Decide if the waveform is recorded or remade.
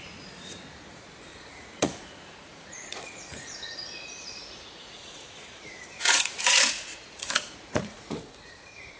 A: remade